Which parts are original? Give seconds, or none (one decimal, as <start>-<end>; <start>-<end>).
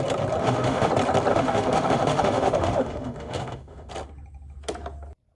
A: 0.0-0.4; 0.9-1.3; 3.9-5.4